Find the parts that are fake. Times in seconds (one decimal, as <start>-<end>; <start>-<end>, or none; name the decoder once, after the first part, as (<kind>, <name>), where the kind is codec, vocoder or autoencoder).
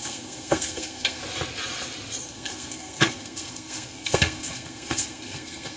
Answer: 0.0-1.2 (codec, SNAC); 2.2-5.8